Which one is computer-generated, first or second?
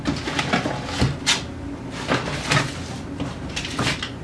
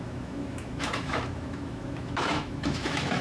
second